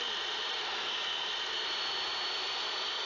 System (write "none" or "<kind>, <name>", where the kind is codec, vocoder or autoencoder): none